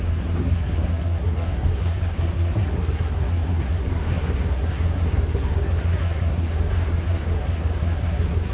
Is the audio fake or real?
fake